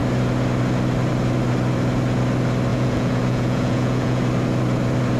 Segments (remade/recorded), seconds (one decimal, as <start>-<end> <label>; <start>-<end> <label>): 0.0-2.7 recorded; 2.7-4.2 remade; 4.2-5.2 recorded